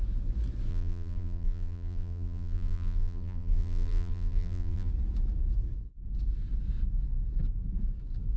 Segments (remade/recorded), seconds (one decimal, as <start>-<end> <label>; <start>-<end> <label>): 0.0-0.7 recorded; 0.7-4.9 remade; 4.9-8.4 recorded

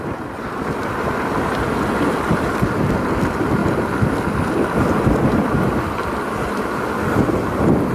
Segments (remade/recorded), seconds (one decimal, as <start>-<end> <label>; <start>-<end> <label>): 0.0-7.9 recorded

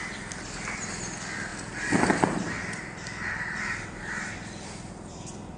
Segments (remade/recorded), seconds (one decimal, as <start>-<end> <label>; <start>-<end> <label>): 0.0-5.6 recorded

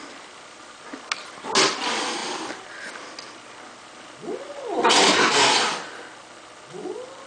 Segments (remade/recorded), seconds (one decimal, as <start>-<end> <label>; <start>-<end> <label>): 0.0-7.3 recorded

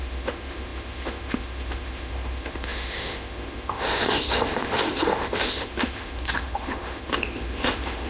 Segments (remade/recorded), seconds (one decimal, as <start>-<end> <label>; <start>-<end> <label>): 0.0-8.1 remade